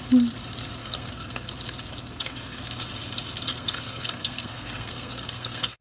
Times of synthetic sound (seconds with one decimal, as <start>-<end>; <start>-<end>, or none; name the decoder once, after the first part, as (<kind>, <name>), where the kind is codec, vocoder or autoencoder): 0.8-1.5 (codec, SNAC); 2.0-2.6; 3.5-5.8